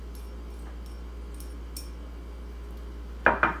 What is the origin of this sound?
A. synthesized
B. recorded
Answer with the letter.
B